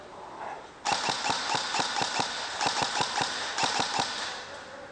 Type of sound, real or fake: real